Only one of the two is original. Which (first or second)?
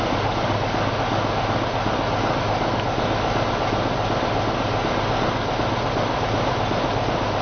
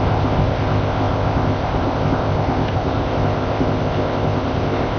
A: first